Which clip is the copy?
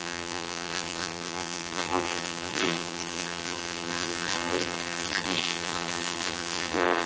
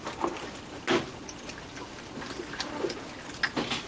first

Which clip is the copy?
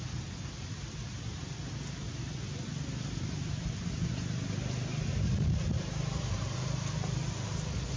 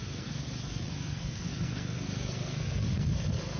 second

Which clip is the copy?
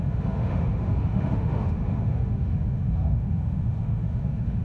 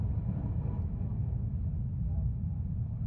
first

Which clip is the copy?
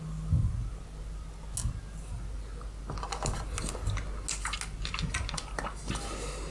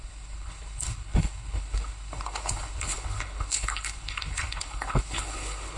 second